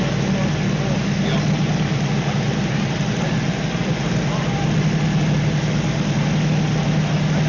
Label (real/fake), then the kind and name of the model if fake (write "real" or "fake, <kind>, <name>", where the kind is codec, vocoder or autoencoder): real